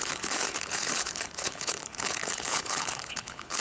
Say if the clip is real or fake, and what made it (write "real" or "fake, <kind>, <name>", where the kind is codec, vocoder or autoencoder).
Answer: fake, codec, HILCodec